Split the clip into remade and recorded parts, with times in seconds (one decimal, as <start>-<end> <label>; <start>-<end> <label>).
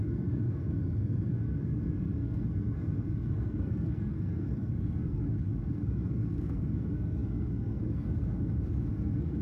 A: 0.0-9.4 remade